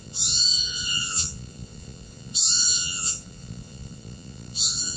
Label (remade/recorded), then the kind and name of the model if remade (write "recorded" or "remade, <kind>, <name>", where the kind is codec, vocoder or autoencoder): remade, vocoder, Vocos